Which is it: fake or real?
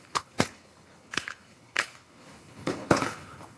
fake